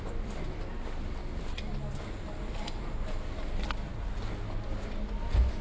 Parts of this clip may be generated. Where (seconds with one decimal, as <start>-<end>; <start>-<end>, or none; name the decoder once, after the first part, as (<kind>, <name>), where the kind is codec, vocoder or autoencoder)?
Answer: none